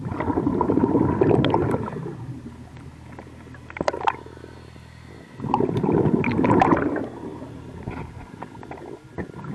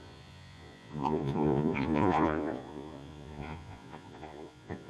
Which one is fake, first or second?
second